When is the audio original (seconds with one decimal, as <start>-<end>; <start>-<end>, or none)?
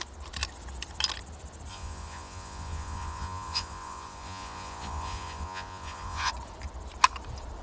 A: 0.0-1.7; 6.3-7.6